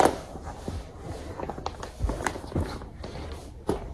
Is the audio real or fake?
real